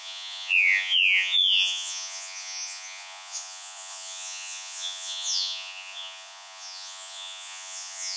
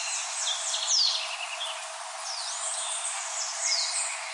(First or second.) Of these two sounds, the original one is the second